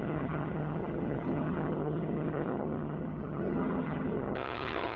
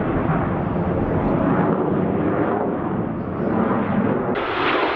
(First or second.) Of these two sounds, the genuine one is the second